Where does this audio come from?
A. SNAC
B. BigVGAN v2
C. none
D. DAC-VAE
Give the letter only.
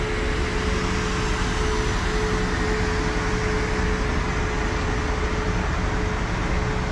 C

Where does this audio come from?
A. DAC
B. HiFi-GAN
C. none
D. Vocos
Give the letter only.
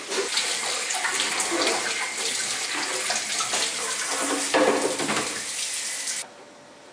C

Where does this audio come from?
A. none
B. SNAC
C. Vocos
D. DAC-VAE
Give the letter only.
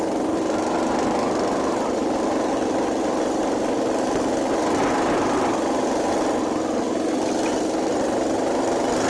A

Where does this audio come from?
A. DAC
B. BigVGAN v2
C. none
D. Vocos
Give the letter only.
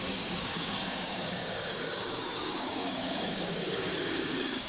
A